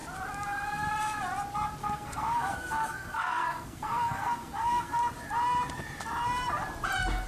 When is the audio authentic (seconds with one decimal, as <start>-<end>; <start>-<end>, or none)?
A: 0.0-1.8; 5.0-7.3